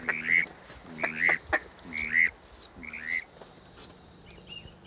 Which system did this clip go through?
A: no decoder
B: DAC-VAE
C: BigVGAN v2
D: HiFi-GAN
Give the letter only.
A